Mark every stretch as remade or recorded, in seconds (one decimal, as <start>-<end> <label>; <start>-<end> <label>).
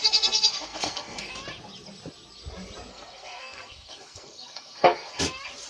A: 0.0-1.3 remade; 1.3-2.9 recorded; 2.9-5.2 remade; 5.2-5.7 recorded